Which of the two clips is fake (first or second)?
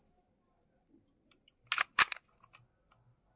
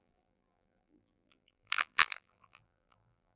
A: second